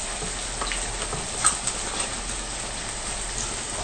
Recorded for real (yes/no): yes